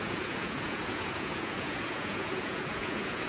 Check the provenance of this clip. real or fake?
fake